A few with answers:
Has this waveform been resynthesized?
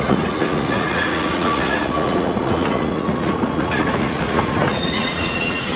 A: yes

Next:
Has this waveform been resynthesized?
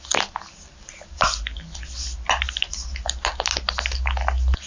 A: no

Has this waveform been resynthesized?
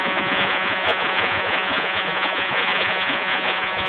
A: yes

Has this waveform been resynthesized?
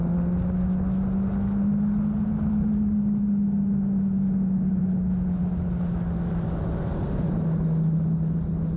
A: no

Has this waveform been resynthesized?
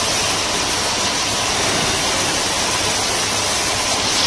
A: no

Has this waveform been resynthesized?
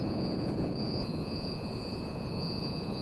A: yes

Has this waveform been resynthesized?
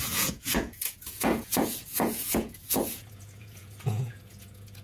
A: yes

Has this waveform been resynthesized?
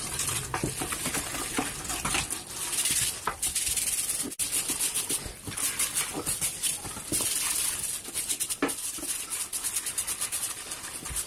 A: no